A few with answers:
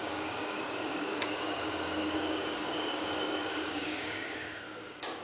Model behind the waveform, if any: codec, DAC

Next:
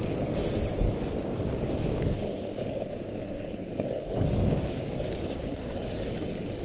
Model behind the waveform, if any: codec, DAC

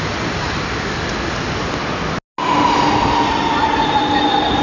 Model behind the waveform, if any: none